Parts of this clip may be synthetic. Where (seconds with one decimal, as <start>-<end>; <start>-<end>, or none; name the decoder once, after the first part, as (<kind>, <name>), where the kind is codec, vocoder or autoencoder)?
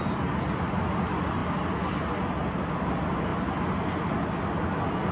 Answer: none